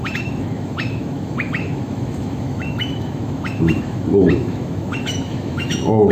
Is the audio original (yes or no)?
no